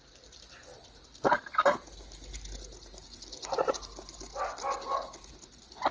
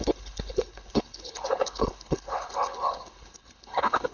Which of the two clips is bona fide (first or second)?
first